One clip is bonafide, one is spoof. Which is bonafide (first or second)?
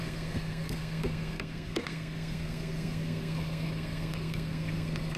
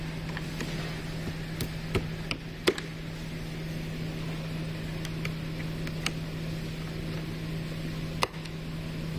second